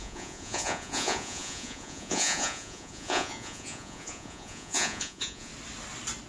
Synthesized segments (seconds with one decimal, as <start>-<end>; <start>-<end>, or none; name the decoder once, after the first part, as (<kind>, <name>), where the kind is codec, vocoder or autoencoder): 0.0-5.5 (vocoder, Vocos)